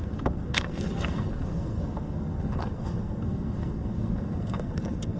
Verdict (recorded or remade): remade